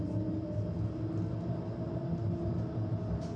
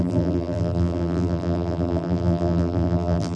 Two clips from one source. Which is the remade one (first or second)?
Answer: second